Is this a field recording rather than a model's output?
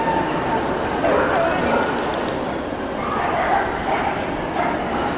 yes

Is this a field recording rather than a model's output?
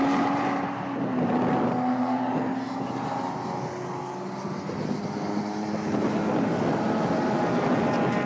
yes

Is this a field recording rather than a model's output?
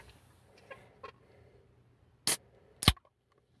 yes